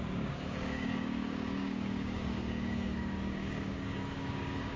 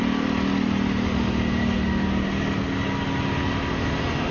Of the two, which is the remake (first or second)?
first